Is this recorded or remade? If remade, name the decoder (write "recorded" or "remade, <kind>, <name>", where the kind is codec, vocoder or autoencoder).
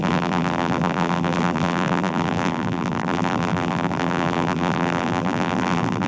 remade, vocoder, BigVGAN v2